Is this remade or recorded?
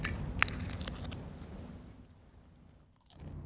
recorded